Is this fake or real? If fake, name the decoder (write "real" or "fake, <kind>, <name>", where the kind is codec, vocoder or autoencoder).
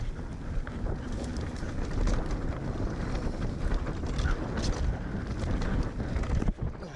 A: real